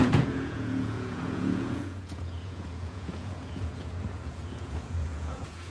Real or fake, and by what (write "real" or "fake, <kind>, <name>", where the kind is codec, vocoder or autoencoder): fake, vocoder, Vocos